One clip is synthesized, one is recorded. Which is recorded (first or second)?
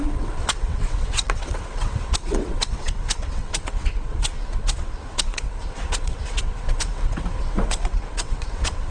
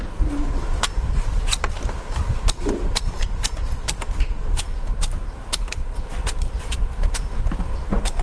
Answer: second